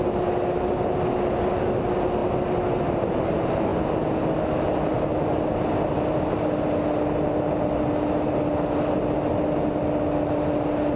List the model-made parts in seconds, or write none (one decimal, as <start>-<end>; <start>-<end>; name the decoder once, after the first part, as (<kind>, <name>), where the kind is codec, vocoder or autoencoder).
none